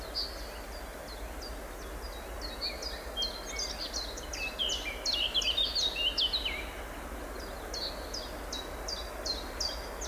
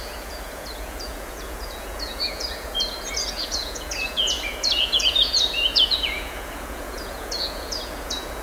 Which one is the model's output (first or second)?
second